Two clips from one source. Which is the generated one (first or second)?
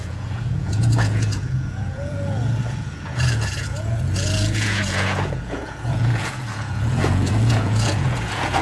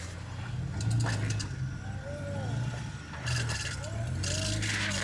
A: first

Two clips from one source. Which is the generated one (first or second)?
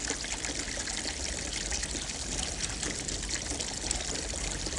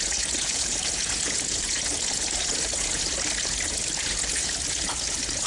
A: second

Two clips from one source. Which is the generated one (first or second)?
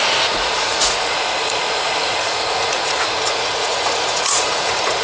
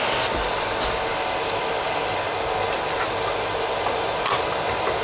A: first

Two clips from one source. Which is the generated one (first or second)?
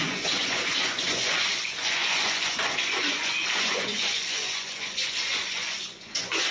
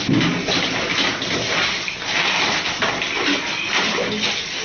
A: first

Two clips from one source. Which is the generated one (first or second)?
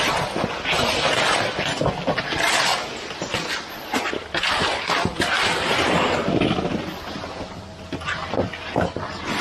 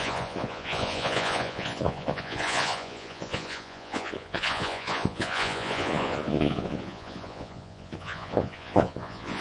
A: second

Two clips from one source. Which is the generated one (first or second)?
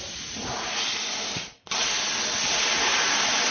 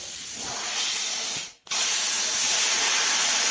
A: second